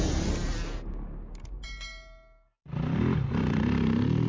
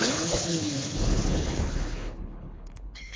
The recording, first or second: first